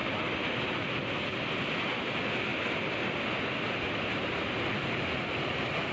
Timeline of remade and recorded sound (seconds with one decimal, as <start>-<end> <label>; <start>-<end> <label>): 0.0-2.1 recorded; 2.1-2.5 remade; 2.5-4.0 recorded; 4.0-5.9 remade